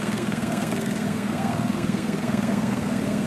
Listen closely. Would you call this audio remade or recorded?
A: remade